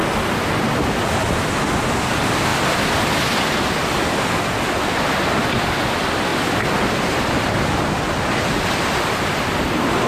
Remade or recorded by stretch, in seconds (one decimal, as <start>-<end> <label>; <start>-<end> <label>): 0.0-0.5 remade; 0.5-6.3 recorded; 6.3-8.3 remade; 8.3-10.1 recorded